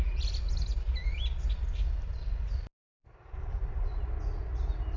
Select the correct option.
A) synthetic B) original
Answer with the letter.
B